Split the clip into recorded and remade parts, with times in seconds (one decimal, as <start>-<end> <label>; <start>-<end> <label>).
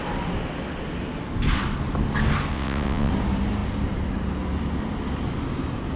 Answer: 0.0-2.5 recorded; 2.5-3.1 remade; 3.1-6.0 recorded